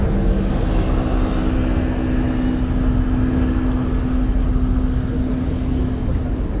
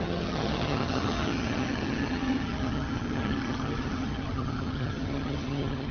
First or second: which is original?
first